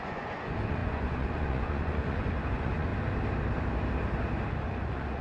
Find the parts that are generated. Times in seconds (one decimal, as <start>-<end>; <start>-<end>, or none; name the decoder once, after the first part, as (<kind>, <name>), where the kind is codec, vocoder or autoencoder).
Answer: 0.0-2.9 (vocoder, Vocos); 4.5-5.2